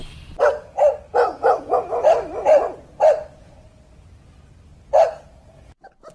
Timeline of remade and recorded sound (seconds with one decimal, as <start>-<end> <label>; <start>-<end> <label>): 0.0-1.3 recorded; 1.3-2.0 remade; 2.0-6.1 recorded